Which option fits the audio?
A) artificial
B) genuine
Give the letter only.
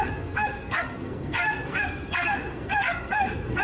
A